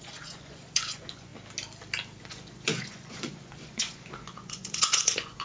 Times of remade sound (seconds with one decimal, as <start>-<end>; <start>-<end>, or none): 0.0-1.3; 2.2-5.4